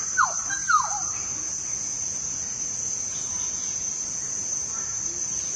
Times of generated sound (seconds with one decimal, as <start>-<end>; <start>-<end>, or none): 0.0-3.3; 3.9-5.6